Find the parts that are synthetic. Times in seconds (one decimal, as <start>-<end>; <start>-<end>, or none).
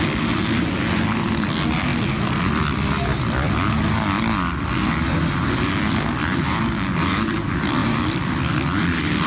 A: 7.8-9.3